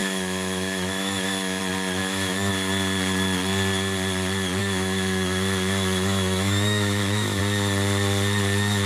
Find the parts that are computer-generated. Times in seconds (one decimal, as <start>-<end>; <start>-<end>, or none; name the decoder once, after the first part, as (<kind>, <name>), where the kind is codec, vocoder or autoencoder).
0.0-1.6 (autoencoder, DAC-VAE); 2.0-2.5; 4.6-7.4